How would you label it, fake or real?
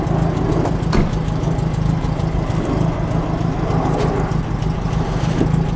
real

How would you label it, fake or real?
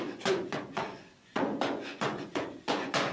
fake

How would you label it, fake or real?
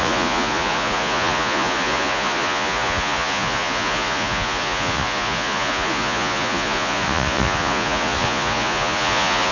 fake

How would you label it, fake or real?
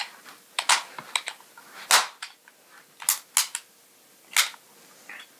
real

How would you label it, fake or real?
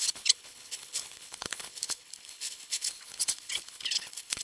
fake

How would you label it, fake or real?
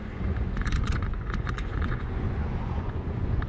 fake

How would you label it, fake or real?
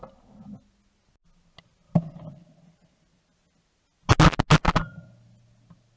real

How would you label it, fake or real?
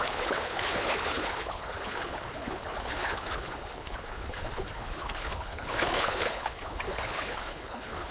fake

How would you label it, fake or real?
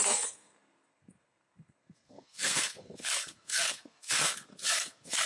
fake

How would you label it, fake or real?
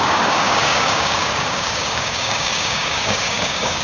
fake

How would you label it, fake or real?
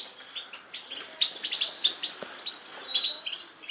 real